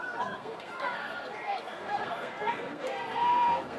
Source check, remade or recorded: remade